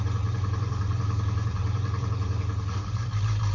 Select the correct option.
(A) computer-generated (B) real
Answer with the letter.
A